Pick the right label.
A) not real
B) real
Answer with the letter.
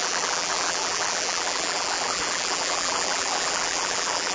A